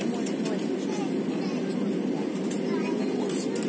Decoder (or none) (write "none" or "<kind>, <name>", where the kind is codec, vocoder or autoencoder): none